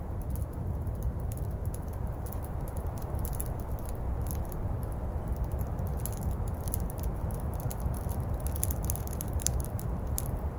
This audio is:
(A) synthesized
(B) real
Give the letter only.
B